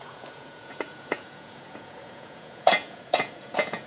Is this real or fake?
fake